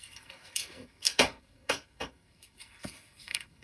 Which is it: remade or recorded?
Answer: remade